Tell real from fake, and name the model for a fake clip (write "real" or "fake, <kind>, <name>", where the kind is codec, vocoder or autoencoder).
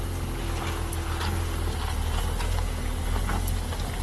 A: real